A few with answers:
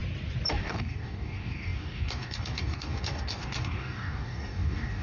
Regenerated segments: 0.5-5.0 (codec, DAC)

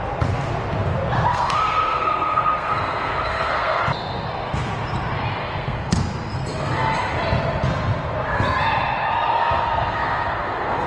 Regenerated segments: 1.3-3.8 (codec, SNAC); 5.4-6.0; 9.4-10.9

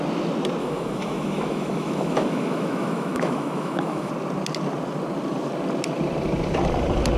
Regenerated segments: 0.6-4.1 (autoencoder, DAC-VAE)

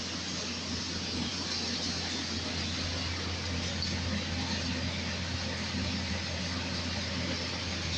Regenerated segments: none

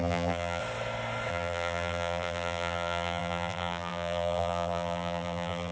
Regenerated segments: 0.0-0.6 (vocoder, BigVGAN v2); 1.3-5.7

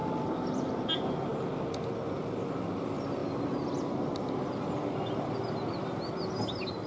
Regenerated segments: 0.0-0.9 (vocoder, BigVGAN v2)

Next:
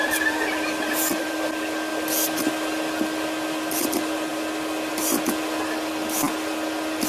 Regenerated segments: 0.0-1.4 (vocoder, BigVGAN v2)

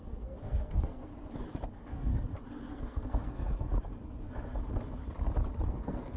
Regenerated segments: 0.0-1.1 (codec, SNAC); 1.7-2.1; 2.7-3.7; 5.7-6.2